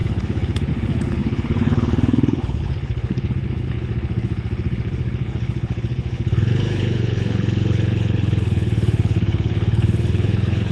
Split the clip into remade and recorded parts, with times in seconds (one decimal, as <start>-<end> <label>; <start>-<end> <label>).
0.0-10.7 remade